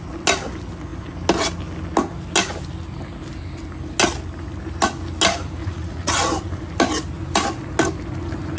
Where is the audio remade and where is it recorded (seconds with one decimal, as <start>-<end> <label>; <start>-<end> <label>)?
0.0-5.6 recorded; 5.6-6.2 remade; 6.2-8.6 recorded